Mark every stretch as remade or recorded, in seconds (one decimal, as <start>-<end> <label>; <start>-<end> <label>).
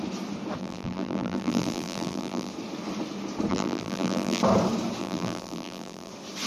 0.0-0.6 recorded; 0.6-2.5 remade; 2.5-3.5 recorded; 3.5-4.4 remade; 4.4-5.0 recorded; 5.0-6.1 remade; 6.1-6.5 recorded